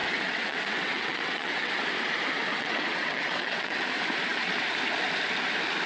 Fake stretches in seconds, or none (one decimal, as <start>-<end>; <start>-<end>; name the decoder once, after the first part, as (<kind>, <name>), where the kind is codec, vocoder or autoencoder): 0.0-1.7 (vocoder, WaveNeXt); 2.5-3.9